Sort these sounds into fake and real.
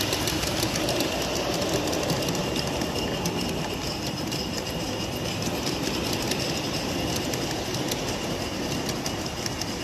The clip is real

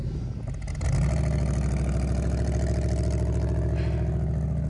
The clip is real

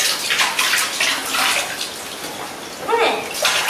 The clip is real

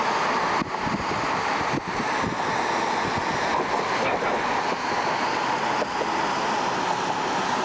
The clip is real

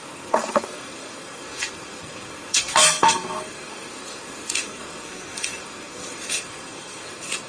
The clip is fake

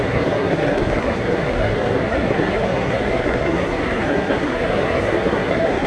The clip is fake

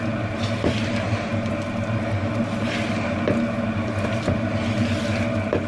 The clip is real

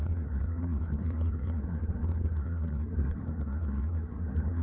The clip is fake